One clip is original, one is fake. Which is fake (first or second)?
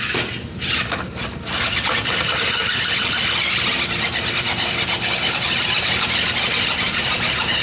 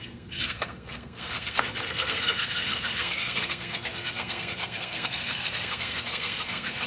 second